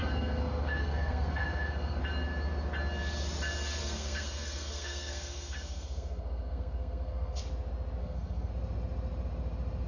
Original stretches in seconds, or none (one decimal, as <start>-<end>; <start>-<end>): 2.0-3.8; 7.4-8.0; 8.5-9.9